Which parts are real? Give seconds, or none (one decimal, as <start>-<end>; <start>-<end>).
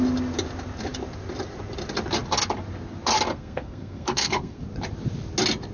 0.0-3.3; 4.6-5.7